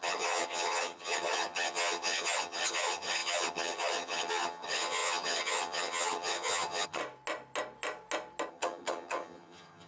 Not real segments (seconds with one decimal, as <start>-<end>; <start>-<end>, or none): 0.0-7.0; 8.5-9.9